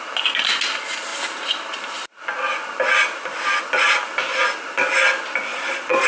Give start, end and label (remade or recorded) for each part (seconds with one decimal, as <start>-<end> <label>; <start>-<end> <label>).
0.0-5.5 recorded; 5.5-6.1 remade